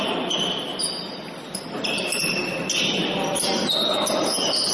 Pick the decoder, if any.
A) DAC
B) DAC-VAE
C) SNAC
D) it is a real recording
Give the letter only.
D